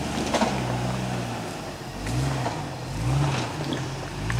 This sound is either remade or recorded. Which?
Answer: recorded